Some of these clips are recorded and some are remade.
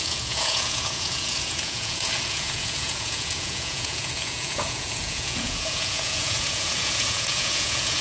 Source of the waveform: remade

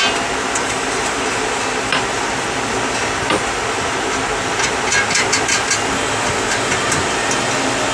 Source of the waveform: recorded